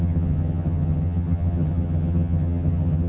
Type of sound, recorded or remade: remade